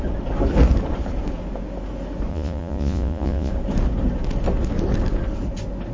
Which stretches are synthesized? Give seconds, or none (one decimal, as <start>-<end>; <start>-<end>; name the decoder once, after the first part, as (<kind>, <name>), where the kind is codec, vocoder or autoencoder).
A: 2.3-3.5 (vocoder, Vocos)